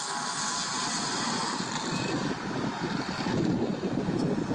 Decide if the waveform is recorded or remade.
recorded